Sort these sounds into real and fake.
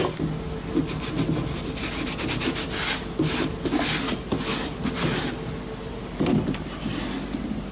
real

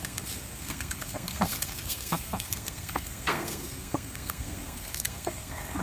fake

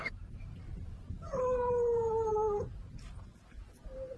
fake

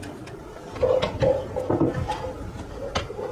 real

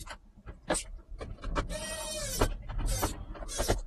real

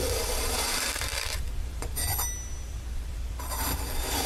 fake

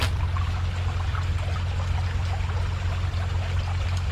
real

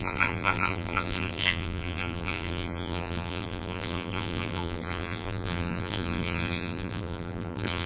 fake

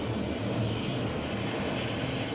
real